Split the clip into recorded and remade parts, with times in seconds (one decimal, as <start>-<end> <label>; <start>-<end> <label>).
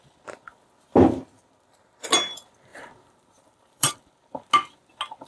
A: 0.0-2.7 recorded; 2.7-3.9 remade; 3.9-5.3 recorded